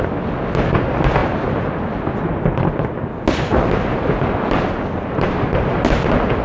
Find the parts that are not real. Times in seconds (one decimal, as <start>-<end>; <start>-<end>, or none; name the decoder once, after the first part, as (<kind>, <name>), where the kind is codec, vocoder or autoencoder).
none